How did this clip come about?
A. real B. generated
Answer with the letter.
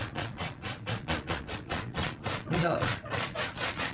B